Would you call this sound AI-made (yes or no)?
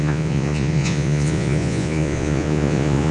yes